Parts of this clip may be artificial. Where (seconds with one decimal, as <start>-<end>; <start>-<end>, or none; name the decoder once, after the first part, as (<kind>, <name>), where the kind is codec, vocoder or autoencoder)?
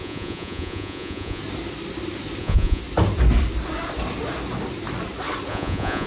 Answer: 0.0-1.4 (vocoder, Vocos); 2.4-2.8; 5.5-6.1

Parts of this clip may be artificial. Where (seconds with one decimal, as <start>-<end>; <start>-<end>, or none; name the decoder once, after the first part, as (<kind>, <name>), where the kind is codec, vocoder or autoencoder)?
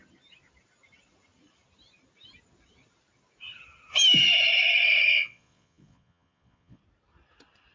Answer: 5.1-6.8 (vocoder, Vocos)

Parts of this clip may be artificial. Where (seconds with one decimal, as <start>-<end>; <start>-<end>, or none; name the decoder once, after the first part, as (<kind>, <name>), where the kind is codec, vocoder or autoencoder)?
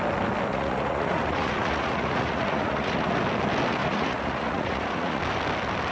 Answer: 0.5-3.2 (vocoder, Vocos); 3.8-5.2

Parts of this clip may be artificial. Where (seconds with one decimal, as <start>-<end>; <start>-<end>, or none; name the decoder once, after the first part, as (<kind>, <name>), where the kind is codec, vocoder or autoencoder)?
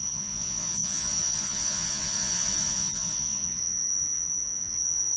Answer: 0.0-5.2 (vocoder, Vocos)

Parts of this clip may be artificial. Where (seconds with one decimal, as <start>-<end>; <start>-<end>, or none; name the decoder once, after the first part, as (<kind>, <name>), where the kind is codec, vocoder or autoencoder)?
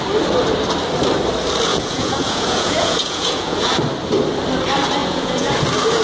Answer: 1.7-3.7 (vocoder, Vocos); 5.0-5.5